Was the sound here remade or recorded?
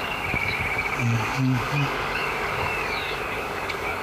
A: remade